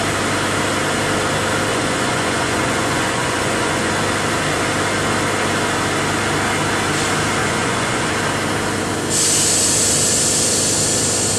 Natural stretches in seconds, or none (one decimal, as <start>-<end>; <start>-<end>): 0.0-1.7; 3.9-7.4; 8.1-11.4